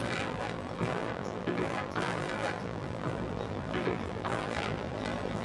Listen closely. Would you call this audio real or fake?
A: fake